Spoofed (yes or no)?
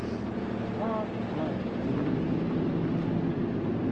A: no